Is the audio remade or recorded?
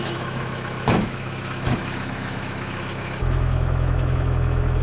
remade